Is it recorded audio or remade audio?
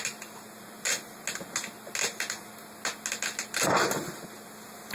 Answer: recorded